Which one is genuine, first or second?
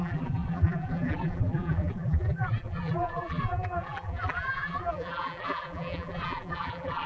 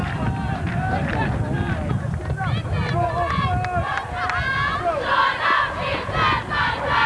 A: second